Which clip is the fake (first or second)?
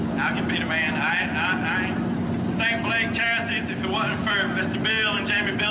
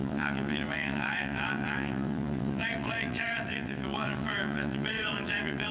second